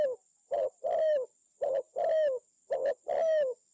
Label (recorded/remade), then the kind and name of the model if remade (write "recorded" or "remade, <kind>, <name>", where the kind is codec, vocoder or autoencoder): recorded